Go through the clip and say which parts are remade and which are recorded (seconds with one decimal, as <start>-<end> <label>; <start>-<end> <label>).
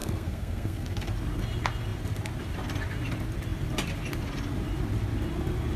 0.0-1.1 remade; 1.1-5.8 recorded